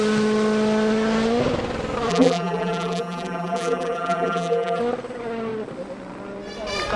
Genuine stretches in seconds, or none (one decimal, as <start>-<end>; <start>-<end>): 0.0-2.1; 4.8-7.0